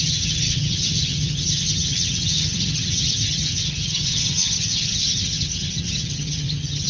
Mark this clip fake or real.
fake